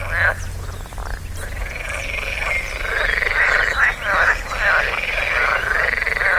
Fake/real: real